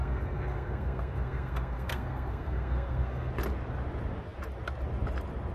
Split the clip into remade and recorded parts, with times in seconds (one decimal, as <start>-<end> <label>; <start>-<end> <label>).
0.0-3.3 remade; 3.3-5.5 recorded